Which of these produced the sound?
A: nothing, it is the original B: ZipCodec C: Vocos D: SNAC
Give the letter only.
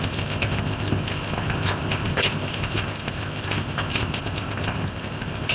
B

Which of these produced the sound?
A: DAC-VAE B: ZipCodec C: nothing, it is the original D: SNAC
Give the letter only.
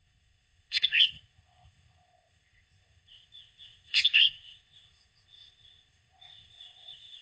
B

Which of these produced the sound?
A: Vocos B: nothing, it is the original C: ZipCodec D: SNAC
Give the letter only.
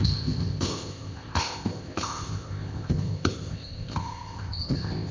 C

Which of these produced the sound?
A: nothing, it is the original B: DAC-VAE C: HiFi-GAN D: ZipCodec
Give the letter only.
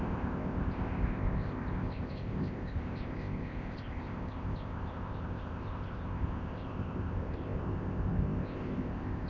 D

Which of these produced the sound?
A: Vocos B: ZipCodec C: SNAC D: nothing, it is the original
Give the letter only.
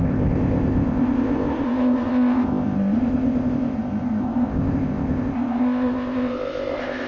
B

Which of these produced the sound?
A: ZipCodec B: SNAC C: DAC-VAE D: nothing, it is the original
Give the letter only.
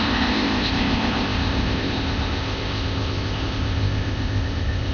A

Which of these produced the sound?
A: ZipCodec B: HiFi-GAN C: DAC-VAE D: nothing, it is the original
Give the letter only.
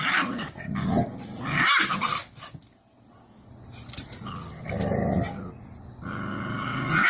D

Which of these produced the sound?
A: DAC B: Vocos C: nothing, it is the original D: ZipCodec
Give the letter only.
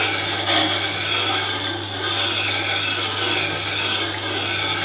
C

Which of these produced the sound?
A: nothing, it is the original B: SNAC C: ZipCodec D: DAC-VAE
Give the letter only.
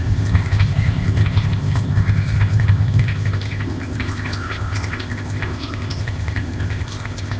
C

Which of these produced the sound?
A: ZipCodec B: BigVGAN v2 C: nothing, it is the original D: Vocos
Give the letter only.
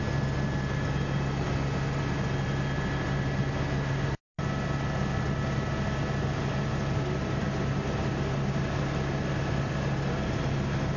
C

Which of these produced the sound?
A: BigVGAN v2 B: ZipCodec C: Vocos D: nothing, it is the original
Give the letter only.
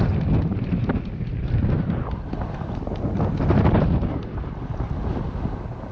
D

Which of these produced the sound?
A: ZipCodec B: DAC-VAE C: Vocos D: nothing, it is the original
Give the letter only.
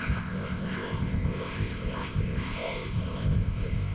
A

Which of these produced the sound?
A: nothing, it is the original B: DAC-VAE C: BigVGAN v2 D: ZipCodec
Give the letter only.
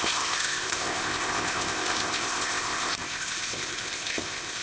D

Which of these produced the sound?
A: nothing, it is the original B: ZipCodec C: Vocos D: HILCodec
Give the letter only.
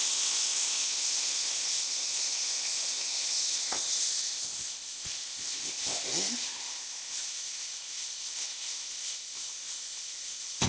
B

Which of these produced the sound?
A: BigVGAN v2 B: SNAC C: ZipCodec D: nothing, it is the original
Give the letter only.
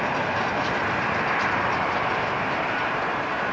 D